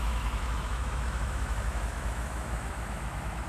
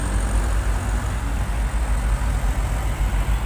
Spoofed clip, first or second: first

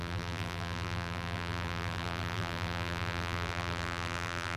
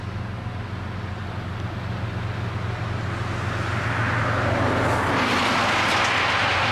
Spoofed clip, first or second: first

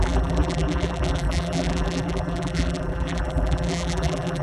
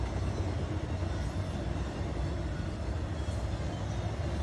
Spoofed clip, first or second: first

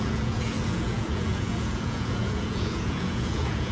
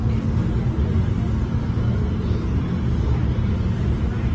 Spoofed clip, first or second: first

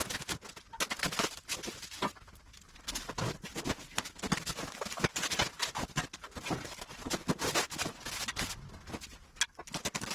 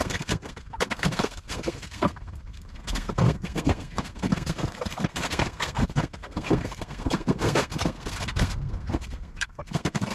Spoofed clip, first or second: second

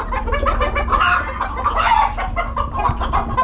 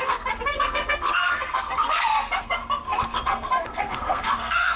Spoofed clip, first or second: second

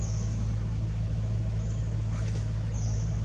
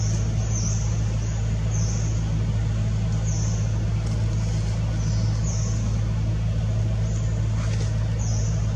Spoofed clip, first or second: first